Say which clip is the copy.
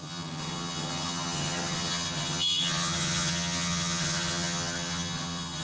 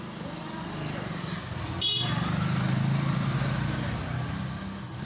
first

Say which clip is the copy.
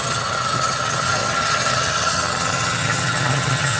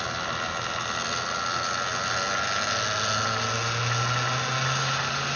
first